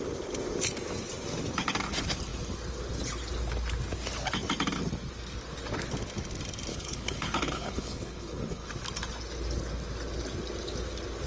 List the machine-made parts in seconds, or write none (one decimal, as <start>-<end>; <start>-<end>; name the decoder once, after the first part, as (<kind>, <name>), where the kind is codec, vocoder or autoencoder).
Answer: 6.7-8.7 (codec, HILCodec)